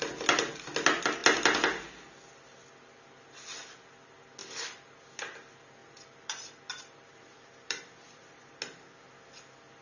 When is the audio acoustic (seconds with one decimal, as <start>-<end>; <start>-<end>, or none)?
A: 0.0-4.4; 5.0-5.8; 8.4-9.8

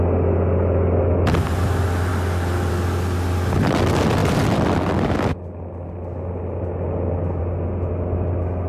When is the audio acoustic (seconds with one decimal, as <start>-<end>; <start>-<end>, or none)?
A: 0.0-8.7

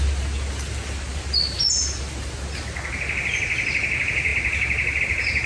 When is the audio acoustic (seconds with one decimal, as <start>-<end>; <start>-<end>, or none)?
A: 0.0-5.5

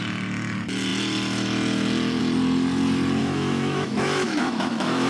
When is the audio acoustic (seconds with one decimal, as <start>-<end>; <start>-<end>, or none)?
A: 0.0-3.2

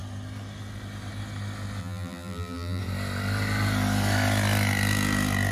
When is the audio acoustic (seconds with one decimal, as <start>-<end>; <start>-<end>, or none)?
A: 0.0-1.8; 2.8-5.5